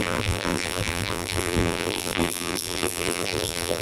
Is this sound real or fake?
fake